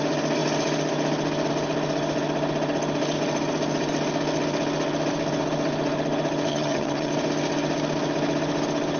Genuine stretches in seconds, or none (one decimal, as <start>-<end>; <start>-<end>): 0.0-6.5; 7.1-9.0